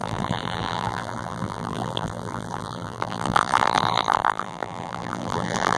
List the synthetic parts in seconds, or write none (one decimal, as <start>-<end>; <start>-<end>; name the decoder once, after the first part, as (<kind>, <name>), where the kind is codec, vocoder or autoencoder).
0.0-5.8 (vocoder, BigVGAN v2)

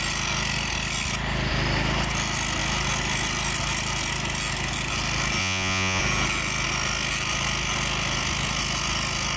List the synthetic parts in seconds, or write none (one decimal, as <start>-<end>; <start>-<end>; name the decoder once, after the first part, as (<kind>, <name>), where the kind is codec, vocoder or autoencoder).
5.4-6.0 (vocoder, Vocos)

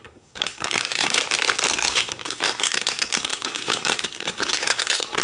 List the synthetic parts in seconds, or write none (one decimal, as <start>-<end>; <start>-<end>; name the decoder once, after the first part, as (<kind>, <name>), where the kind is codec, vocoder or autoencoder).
0.0-1.2 (codec, SNAC); 1.7-5.2

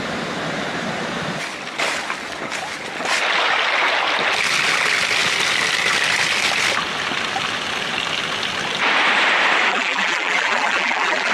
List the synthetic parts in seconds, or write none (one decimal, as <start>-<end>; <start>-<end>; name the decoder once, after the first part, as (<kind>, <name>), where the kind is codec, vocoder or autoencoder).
9.7-11.3 (vocoder, BigVGAN v2)

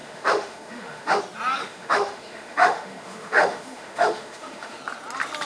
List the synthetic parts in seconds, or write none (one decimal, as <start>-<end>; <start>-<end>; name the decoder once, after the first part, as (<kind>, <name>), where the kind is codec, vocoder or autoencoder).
0.0-1.2 (autoencoder, DAC-VAE); 1.6-4.8

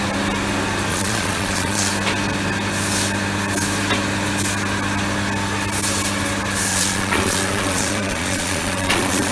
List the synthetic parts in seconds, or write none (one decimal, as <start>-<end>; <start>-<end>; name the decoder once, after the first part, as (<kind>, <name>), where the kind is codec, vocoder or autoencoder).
0.9-1.9 (vocoder, Vocos); 6.7-9.3

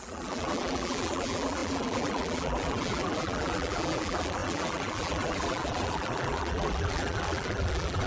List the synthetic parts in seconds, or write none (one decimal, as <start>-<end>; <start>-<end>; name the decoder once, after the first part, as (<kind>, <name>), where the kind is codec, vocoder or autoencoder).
0.0-8.1 (vocoder, BigVGAN v2)

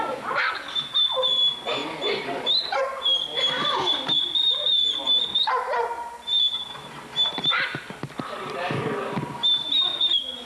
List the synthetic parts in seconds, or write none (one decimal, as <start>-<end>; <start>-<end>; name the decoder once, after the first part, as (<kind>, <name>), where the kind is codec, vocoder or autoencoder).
none